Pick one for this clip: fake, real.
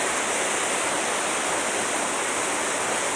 real